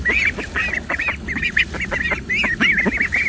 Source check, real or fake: real